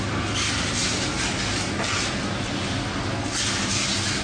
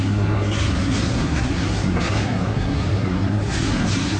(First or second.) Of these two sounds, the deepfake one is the second